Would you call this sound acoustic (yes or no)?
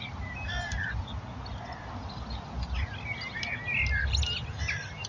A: yes